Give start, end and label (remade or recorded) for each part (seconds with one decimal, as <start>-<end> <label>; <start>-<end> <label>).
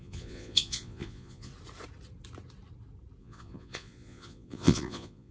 0.0-1.5 remade; 1.5-3.2 recorded; 3.2-5.3 remade